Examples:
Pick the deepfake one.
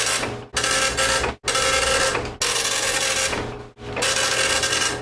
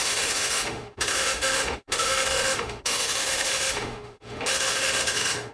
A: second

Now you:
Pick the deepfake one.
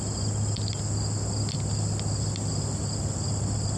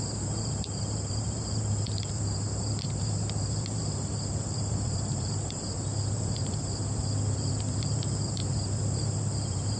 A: second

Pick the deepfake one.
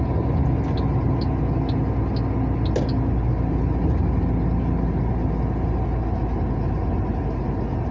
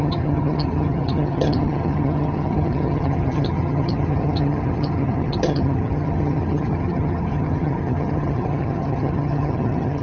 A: second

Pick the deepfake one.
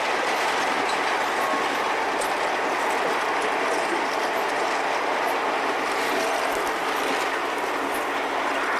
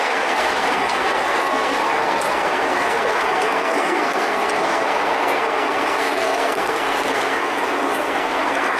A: second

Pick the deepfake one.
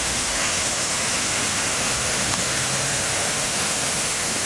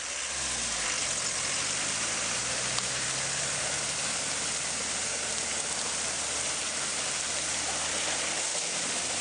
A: first